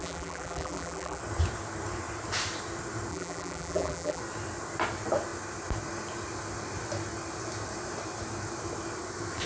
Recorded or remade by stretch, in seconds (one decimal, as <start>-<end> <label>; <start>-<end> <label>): 0.0-1.2 remade; 1.2-3.1 recorded; 3.1-4.2 remade; 4.2-9.5 recorded

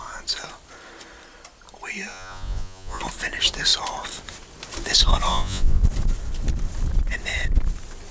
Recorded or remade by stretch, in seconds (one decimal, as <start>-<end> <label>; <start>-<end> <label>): 0.0-2.1 recorded; 2.1-3.0 remade; 3.0-5.3 recorded; 5.3-5.8 remade; 5.8-8.1 recorded

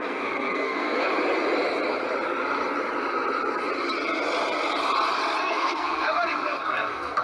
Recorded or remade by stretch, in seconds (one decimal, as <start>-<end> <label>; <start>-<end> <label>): 0.0-1.1 remade; 1.1-5.4 recorded; 5.4-7.2 remade

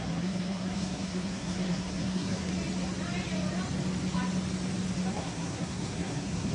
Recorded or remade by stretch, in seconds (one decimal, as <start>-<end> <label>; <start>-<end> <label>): 0.0-2.5 remade; 2.5-5.1 recorded; 5.1-6.5 remade

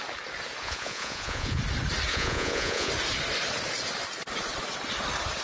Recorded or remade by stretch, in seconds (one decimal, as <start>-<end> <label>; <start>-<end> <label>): 0.0-0.6 recorded; 0.6-1.6 remade; 1.6-2.1 recorded; 2.1-2.9 remade; 2.9-5.4 recorded

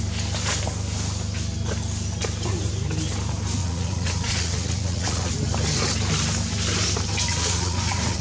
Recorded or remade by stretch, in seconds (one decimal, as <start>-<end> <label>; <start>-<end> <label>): 0.0-3.6 recorded; 3.6-5.3 remade; 5.3-7.3 recorded; 7.3-8.2 remade

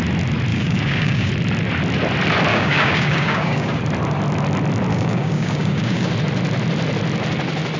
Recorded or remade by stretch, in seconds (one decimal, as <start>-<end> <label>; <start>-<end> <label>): 0.0-0.5 recorded; 0.5-1.3 remade; 1.3-2.5 recorded; 2.5-3.8 remade; 3.8-4.9 recorded; 4.9-6.1 remade; 6.1-7.8 recorded

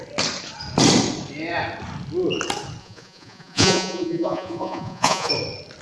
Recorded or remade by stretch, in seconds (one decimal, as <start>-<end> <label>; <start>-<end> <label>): 0.0-2.8 recorded; 2.8-5.3 remade; 5.3-5.8 recorded